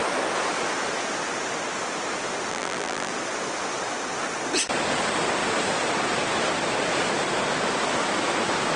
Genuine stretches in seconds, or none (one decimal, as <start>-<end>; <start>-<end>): 0.0-2.5; 3.1-8.8